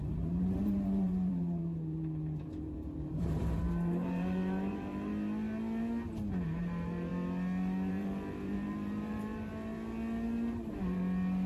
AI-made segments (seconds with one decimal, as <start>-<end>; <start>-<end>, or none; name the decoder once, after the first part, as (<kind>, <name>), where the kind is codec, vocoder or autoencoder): 0.0-5.1 (vocoder, BigVGAN v2); 6.6-7.1; 7.9-9.5